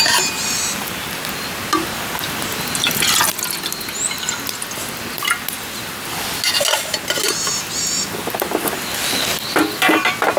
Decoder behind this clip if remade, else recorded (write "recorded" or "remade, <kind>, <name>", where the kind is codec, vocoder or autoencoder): recorded